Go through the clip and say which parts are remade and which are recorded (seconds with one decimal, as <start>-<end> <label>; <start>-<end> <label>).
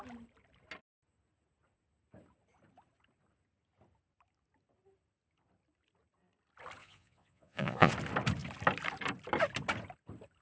0.0-6.8 recorded; 6.8-7.9 remade; 7.9-10.4 recorded